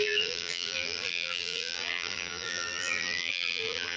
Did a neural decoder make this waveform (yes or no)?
yes